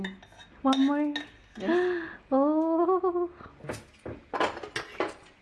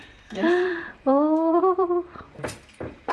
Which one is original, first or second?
first